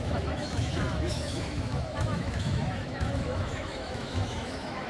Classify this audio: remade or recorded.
remade